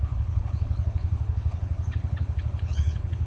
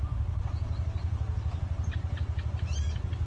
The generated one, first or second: first